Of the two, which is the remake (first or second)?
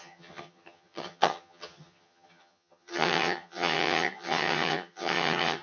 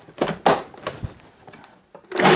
first